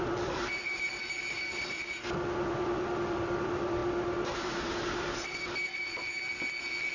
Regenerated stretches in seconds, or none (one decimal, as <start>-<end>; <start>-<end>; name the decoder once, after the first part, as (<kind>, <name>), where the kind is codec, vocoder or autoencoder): 0.0-3.8 (vocoder, BigVGAN v2); 4.4-6.1